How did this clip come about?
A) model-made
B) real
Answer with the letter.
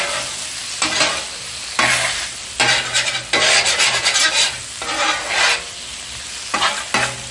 B